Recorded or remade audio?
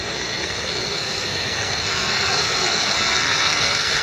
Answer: remade